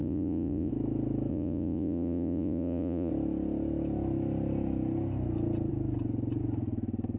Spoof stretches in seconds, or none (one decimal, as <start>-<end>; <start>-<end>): 0.0-0.7; 1.3-3.1

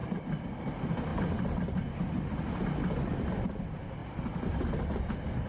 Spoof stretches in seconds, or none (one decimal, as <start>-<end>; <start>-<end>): none

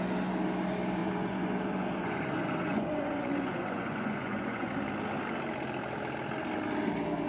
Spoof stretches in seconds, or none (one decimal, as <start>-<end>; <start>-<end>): 1.0-4.7

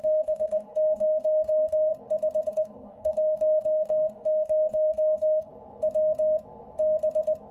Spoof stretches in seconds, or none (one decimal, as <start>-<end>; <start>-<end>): 0.0-1.9; 2.5-5.5

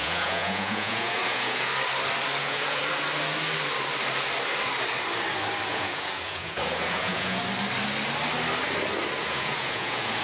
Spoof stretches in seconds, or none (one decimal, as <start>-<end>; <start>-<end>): 0.0-1.7; 2.4-2.8; 5.7-7.4; 9.2-10.2

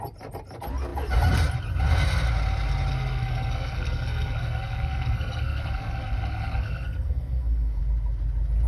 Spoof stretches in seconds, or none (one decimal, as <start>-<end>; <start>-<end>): 2.9-7.8